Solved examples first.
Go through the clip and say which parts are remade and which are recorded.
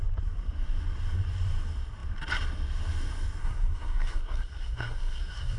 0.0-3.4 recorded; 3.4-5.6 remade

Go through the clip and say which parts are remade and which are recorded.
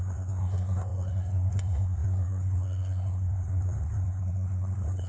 0.0-5.1 remade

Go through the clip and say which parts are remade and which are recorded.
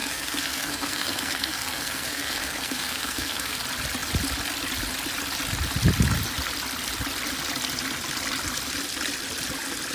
0.0-3.6 remade; 3.6-9.9 recorded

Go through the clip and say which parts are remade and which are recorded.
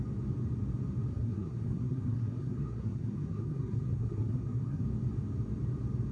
0.0-1.1 recorded; 1.1-4.8 remade; 4.8-6.1 recorded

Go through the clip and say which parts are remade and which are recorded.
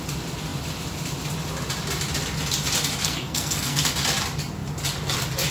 0.0-3.0 recorded; 3.0-3.9 remade; 3.9-5.5 recorded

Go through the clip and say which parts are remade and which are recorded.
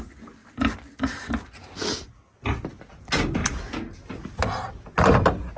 0.0-5.6 recorded